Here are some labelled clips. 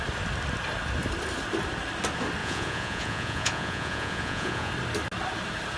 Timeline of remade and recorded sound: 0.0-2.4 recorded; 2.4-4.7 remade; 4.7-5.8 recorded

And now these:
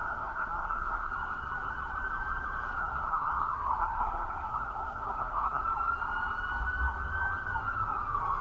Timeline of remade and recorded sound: 0.0-1.1 remade; 1.1-2.8 recorded; 2.8-5.6 remade; 5.6-8.4 recorded

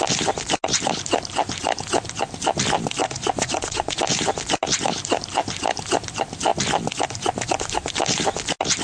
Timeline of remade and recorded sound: 0.0-3.0 recorded; 3.0-4.0 remade; 4.0-8.8 recorded

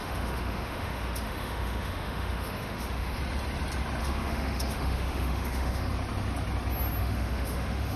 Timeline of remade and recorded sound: 0.0-3.2 remade; 3.2-4.0 recorded; 4.0-5.9 remade; 5.9-7.0 recorded; 7.0-8.0 remade

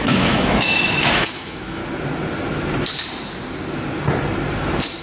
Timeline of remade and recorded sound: 0.0-1.8 remade; 1.8-5.0 recorded

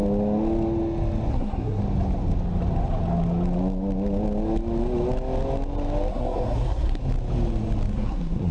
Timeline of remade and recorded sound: 0.0-1.3 recorded; 1.3-1.8 remade; 1.8-6.1 recorded; 6.1-7.0 remade; 7.0-7.9 recorded; 7.9-8.5 remade

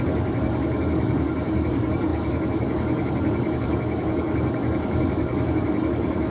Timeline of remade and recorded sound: 0.0-6.3 remade

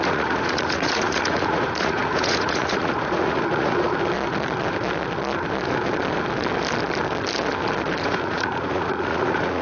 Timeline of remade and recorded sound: 0.0-3.9 remade; 3.9-8.0 recorded; 8.0-9.6 remade